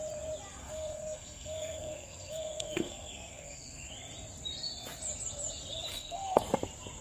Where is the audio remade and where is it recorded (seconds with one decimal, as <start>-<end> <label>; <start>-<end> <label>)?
0.0-0.5 recorded; 0.5-3.9 remade; 3.9-5.9 recorded; 5.9-6.4 remade; 6.4-7.0 recorded